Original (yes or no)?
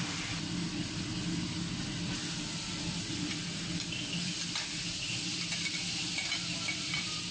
yes